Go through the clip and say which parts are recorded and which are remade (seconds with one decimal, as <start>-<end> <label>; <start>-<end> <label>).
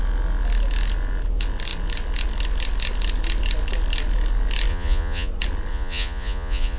0.0-4.7 recorded; 4.7-5.3 remade; 5.3-5.7 recorded; 5.7-6.8 remade